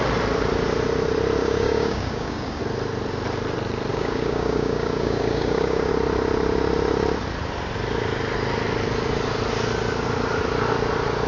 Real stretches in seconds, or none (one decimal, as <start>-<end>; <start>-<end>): 0.0-1.4; 2.6-3.9; 5.9-11.3